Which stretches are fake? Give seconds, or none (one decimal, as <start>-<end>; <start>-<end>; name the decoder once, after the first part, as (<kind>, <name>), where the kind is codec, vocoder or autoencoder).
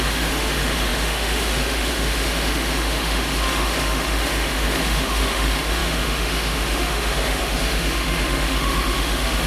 0.0-9.5 (autoencoder, DAC-VAE)